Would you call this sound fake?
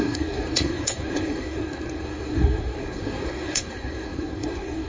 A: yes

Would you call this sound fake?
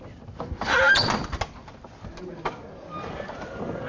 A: no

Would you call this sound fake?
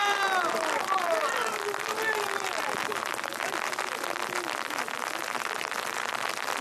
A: no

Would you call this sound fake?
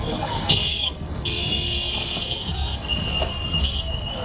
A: yes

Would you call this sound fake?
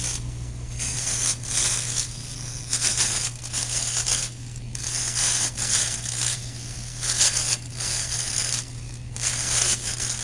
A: yes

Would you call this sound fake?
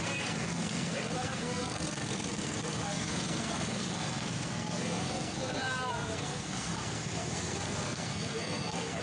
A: yes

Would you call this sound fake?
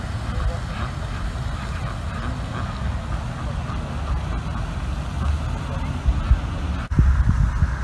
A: no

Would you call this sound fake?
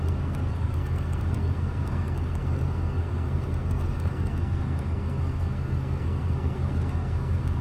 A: yes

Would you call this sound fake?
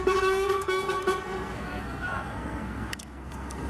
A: yes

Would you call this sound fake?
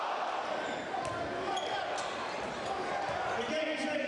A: no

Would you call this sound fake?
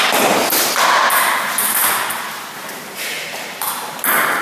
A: no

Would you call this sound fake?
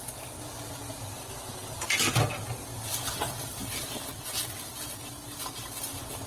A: no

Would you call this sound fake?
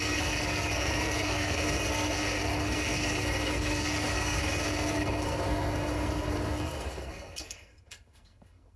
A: yes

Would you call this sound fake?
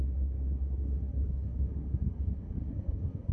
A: yes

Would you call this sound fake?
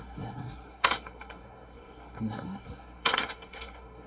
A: yes